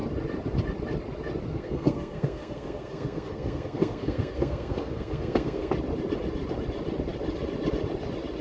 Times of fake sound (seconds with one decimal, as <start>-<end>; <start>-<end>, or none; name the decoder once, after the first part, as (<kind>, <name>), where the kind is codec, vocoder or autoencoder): 1.5-5.7 (codec, SNAC)